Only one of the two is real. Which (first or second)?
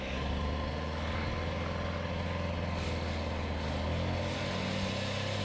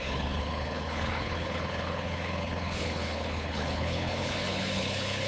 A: first